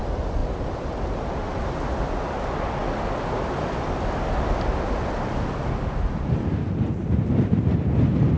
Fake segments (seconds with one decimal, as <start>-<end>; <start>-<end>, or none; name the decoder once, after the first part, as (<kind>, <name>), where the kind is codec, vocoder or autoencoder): none